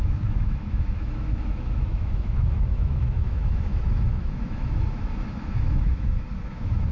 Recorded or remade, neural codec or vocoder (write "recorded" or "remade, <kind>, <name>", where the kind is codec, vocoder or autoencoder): remade, autoencoder, DAC-VAE